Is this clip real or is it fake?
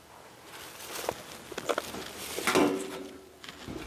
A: real